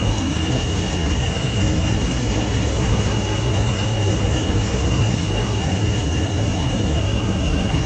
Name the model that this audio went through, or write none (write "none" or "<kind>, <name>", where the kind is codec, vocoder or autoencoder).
codec, SNAC